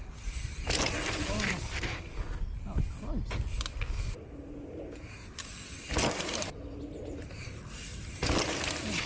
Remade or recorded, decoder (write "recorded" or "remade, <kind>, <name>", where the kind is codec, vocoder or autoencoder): recorded